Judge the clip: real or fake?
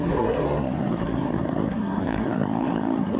fake